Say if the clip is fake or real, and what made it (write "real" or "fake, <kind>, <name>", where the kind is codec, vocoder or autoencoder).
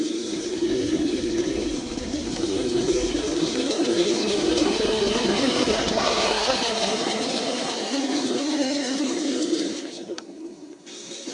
fake, codec, SNAC